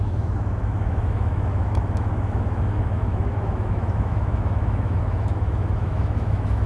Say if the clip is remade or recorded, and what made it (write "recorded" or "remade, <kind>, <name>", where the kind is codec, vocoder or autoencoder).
remade, autoencoder, DAC-VAE